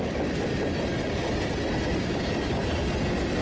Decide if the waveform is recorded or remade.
recorded